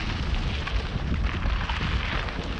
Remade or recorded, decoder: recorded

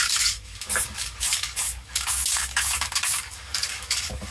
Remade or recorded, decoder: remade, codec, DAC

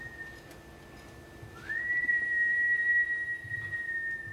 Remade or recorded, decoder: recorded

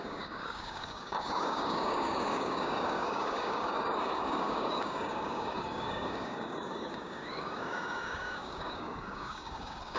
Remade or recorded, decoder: remade, codec, DAC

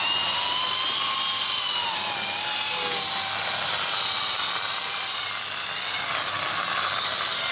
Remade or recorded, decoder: recorded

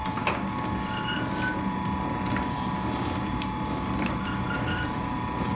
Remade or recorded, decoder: recorded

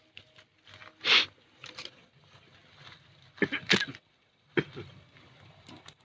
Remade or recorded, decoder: recorded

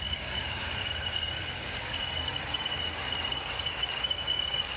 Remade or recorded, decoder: remade, codec, DAC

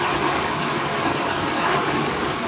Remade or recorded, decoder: remade, codec, DAC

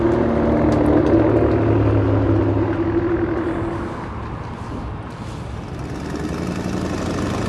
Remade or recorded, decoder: recorded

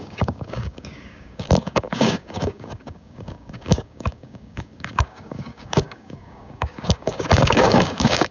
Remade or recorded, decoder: remade, codec, DAC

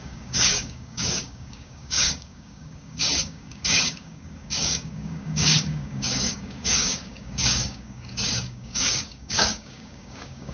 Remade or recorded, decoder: remade, codec, DAC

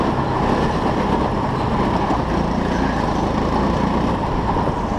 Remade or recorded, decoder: recorded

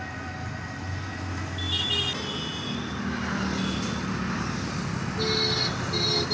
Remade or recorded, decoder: recorded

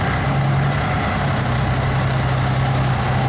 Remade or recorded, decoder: recorded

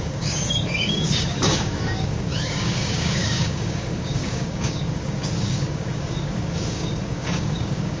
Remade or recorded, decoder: remade, codec, DAC